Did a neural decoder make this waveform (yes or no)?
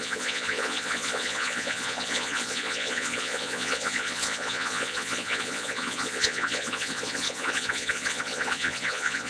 yes